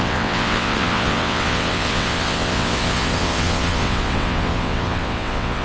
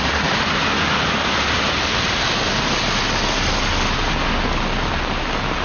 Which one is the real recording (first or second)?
second